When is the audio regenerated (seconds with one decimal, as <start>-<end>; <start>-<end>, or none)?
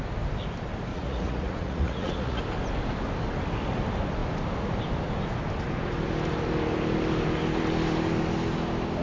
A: 0.9-2.4